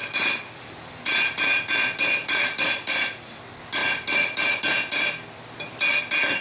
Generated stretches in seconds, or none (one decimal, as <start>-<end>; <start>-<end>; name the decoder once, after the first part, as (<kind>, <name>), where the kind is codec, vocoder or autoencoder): 0.0-1.0 (vocoder, BigVGAN v2); 2.2-3.1; 3.8-4.6